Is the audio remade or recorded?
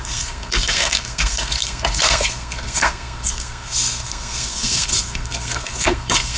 remade